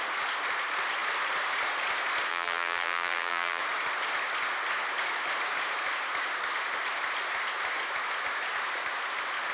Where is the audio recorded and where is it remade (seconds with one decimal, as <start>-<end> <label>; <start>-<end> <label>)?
0.0-2.3 recorded; 2.3-3.6 remade; 3.6-9.5 recorded